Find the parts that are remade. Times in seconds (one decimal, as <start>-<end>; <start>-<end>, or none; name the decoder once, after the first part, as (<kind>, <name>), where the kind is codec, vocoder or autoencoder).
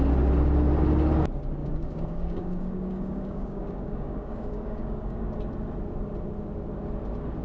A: 1.6-5.3 (codec, DAC)